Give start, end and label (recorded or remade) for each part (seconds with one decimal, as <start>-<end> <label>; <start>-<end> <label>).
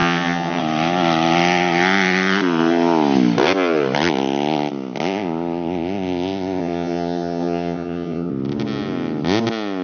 0.0-0.6 remade; 0.6-6.6 recorded; 6.6-8.3 remade; 8.3-9.8 recorded